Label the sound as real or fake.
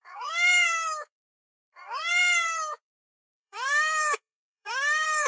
fake